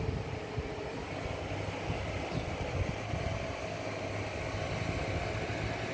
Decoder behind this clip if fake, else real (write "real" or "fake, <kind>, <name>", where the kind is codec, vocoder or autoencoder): real